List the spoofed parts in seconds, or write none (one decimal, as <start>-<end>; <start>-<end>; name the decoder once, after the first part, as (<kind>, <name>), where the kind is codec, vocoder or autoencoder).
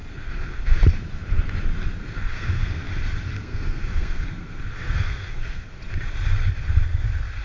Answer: 0.0-0.8 (codec, SNAC); 2.0-2.9; 3.3-5.8